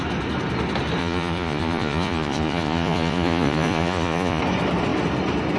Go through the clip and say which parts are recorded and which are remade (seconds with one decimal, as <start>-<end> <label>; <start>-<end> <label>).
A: 0.0-1.0 recorded; 1.0-4.4 remade; 4.4-5.6 recorded